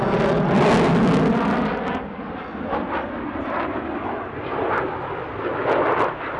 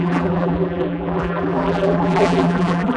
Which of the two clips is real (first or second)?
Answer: first